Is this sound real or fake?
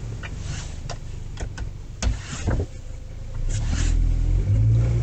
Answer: real